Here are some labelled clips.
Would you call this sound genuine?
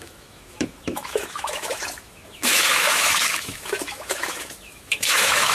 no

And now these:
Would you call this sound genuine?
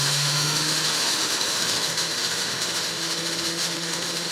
no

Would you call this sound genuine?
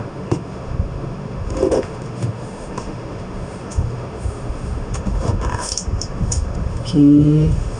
no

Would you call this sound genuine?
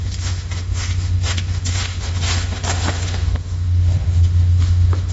no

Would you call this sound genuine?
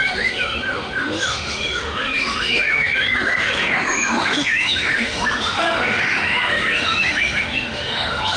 no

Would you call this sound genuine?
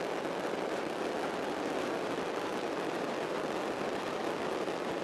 yes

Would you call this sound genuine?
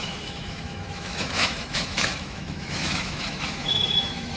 no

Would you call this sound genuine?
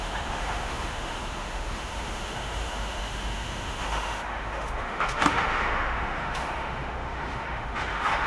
no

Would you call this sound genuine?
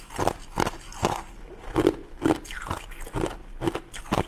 yes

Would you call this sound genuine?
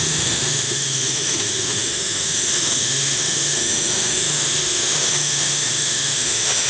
no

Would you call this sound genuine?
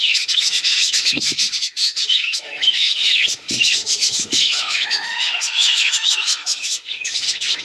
no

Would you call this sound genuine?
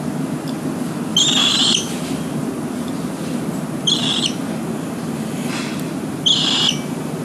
yes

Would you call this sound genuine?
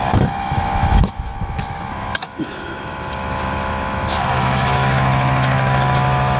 no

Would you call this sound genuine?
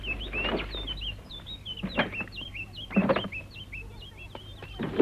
yes